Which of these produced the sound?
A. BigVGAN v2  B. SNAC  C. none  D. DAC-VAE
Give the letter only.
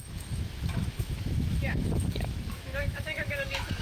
D